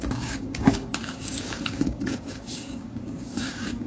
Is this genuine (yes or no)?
no